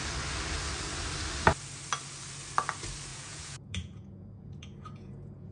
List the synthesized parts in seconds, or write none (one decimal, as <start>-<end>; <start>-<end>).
3.1-5.5